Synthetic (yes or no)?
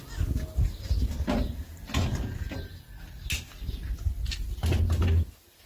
no